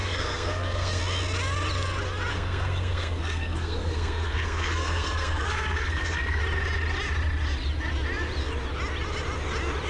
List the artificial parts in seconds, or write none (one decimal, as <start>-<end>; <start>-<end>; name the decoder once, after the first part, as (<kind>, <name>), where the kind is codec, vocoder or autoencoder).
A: 0.0-1.0 (codec, SNAC); 2.3-6.4